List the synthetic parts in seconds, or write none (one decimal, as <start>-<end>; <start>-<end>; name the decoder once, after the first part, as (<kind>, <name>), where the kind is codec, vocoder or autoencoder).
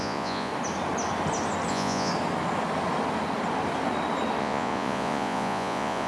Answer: 0.0-0.5 (vocoder, Vocos); 1.7-2.1; 4.4-6.1